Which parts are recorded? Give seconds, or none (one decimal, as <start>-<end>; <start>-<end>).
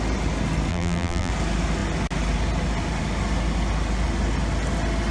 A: 0.0-0.7; 1.3-5.1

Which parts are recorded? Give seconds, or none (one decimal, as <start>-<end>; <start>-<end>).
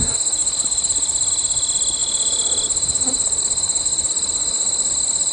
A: 0.0-5.3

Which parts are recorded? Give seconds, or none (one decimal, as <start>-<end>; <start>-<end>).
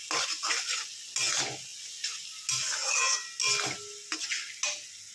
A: 0.0-5.1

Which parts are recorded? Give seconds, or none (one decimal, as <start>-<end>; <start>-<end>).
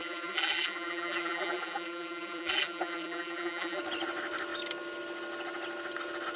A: 3.8-6.4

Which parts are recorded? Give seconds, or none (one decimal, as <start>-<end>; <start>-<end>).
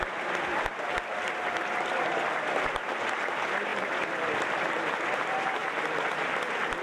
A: 0.0-3.7; 5.0-5.6; 6.1-6.8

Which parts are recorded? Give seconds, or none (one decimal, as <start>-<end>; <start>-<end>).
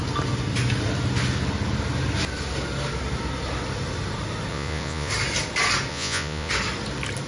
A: 0.0-4.5; 5.1-5.9; 6.5-7.3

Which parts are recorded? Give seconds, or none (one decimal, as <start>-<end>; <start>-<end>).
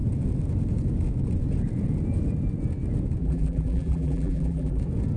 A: 0.0-3.2; 4.8-5.2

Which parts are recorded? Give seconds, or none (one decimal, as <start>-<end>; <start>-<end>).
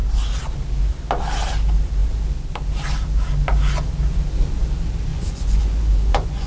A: 0.0-5.1